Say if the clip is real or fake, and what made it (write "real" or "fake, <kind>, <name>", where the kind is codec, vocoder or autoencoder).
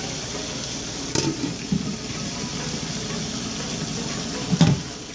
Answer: real